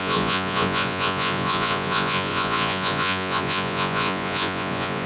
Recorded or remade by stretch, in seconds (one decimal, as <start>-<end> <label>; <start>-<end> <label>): 0.0-5.1 remade